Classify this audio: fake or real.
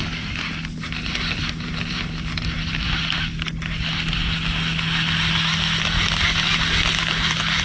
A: real